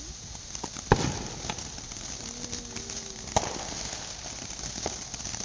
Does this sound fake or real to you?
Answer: real